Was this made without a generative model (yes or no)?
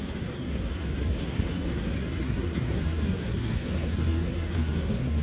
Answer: no